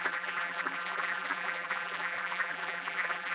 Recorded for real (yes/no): no